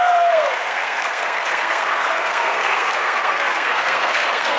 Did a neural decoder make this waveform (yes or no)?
yes